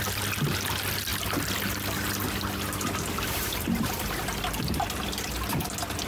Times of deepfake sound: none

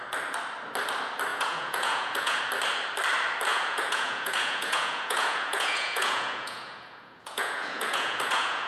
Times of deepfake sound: 1.3-2.4 (vocoder, Vocos); 3.5-8.7